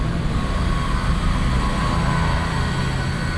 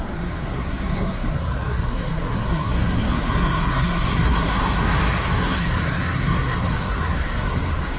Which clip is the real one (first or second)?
first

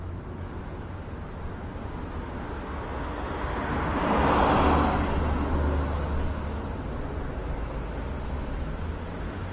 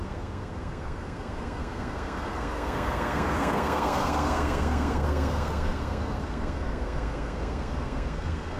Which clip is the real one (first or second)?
first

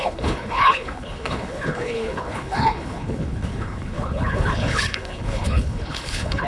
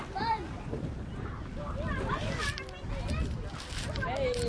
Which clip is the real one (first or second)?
second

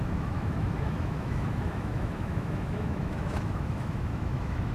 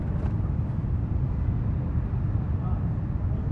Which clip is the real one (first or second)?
second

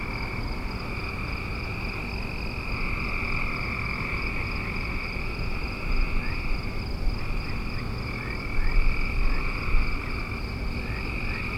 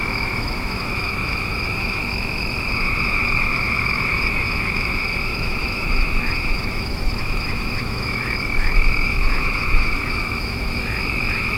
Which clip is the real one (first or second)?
first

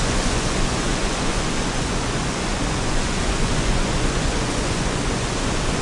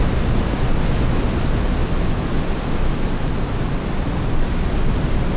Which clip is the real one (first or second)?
second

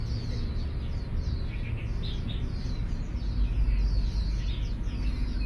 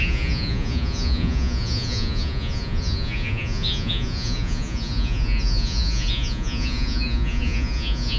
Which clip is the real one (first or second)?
first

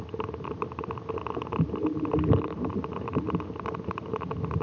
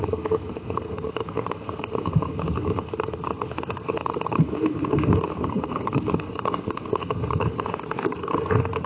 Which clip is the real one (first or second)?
first